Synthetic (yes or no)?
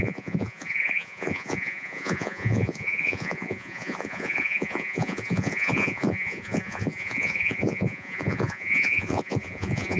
yes